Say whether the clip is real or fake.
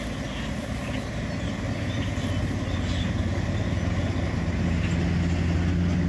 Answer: real